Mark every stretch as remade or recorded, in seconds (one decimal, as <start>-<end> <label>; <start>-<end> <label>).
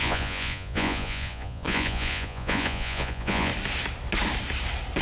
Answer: 0.0-3.5 remade; 3.5-5.0 recorded